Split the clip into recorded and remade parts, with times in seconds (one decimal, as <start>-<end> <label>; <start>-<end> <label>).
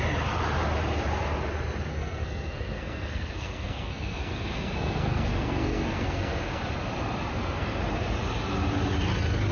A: 0.0-1.9 recorded; 1.9-6.6 remade; 6.6-7.3 recorded; 7.3-7.8 remade; 7.8-9.5 recorded